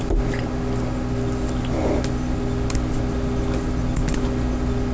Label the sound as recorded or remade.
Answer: recorded